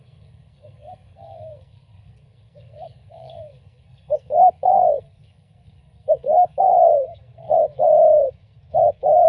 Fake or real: fake